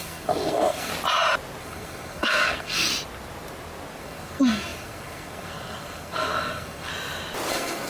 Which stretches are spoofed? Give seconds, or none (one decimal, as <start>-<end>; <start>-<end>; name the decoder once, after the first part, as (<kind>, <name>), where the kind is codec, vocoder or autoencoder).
0.0-0.9 (codec, SNAC); 1.6-2.9; 4.0-6.9; 7.5-7.9